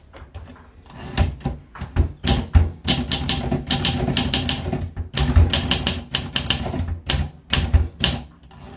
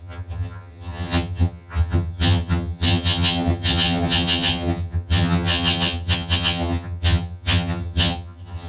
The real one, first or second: first